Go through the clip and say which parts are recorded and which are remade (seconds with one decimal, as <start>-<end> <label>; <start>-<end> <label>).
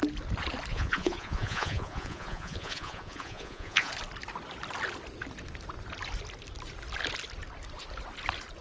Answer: 0.0-0.7 recorded; 0.7-3.9 remade; 3.9-8.6 recorded